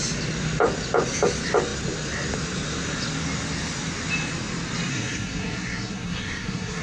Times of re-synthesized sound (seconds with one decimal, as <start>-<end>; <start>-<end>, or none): 4.9-6.8